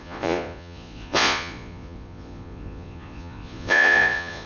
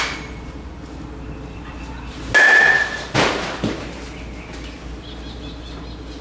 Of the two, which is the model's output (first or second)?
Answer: first